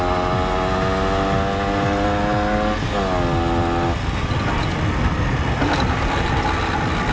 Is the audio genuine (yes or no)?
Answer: yes